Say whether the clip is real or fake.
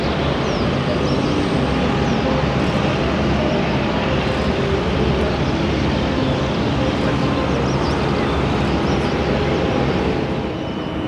real